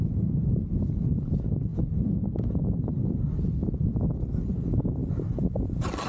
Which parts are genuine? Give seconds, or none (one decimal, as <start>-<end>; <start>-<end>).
0.0-6.1